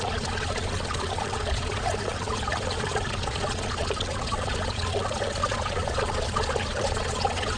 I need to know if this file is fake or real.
fake